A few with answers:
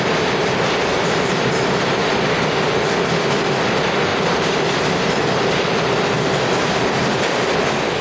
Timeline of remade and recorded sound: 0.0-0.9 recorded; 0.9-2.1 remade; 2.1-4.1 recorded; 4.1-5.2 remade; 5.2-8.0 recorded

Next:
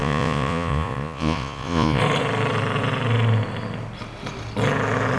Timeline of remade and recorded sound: 0.0-2.0 remade; 2.0-5.2 recorded